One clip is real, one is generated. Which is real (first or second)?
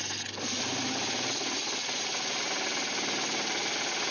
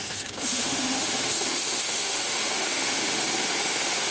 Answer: first